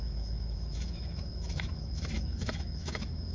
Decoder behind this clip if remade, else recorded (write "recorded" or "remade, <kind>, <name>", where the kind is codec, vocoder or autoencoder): remade, autoencoder, DAC-VAE